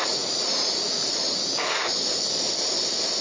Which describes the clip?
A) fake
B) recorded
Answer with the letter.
B